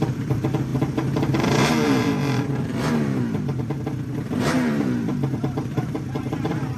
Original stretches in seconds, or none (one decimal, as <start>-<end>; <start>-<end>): 2.7-4.4